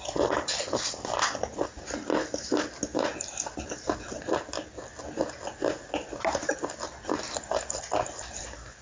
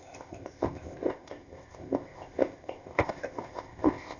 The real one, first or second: first